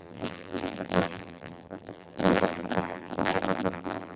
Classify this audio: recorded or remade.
remade